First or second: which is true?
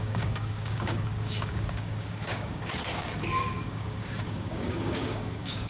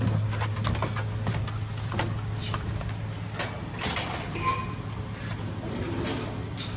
second